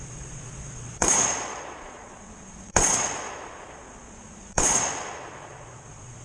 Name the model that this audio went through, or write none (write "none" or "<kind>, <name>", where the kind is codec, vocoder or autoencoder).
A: vocoder, Vocos